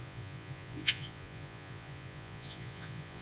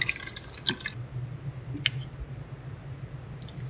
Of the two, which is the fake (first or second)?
first